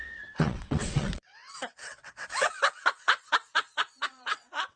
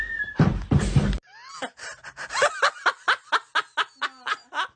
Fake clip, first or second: first